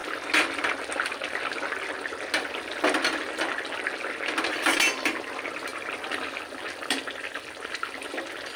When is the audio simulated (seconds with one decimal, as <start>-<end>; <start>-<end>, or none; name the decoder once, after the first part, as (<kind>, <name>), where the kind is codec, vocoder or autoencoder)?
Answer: none